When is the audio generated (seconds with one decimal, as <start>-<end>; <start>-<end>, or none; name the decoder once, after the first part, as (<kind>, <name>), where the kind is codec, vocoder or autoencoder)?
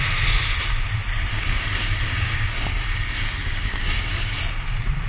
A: 1.3-4.4 (codec, DAC)